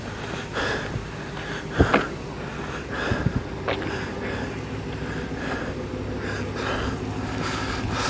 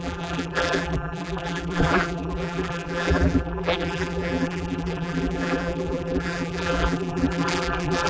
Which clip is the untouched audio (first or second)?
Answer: first